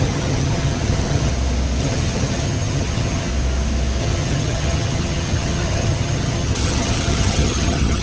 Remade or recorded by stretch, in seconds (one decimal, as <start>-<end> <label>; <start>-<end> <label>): 0.0-1.3 remade; 1.3-1.8 recorded; 1.8-3.3 remade; 3.3-4.0 recorded; 4.0-8.0 remade